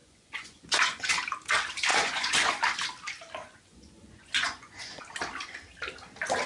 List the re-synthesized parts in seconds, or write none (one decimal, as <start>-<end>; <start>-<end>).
0.0-1.1; 1.9-2.5; 3.4-5.0